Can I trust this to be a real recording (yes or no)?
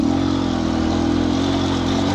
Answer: yes